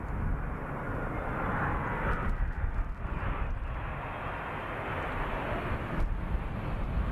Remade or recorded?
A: recorded